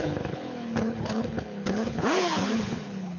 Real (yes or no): no